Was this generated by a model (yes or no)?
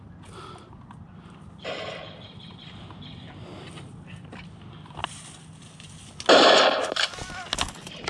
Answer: no